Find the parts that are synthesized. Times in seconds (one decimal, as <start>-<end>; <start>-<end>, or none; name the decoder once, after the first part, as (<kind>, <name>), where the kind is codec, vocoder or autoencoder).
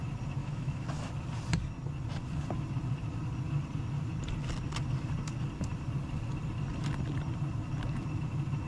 0.4-1.1 (autoencoder, DAC-VAE)